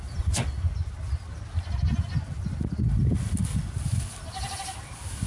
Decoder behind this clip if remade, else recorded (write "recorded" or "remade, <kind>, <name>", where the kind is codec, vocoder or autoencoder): recorded